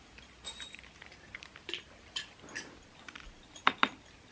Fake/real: real